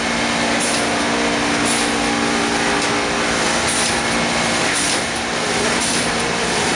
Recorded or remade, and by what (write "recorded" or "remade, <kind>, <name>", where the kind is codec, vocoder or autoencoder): recorded